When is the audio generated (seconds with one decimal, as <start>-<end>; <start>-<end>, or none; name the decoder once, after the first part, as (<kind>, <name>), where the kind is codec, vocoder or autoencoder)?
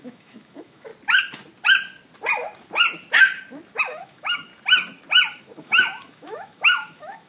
0.0-0.9 (autoencoder, DAC-VAE); 3.8-4.5; 5.4-7.3